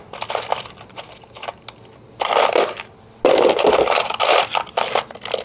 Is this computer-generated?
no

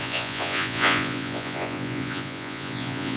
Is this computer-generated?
yes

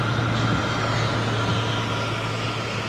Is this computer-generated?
no